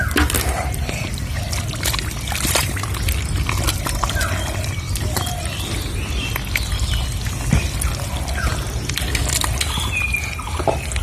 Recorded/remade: recorded